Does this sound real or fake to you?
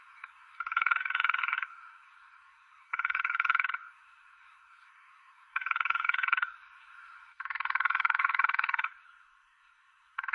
fake